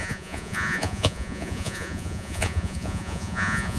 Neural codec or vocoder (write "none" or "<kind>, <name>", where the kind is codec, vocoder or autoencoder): vocoder, Vocos